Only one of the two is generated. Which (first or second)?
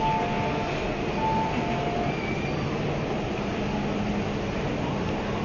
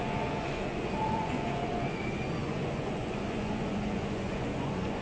second